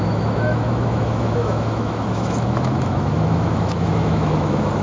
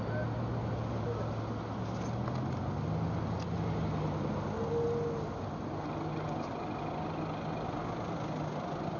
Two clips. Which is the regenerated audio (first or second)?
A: first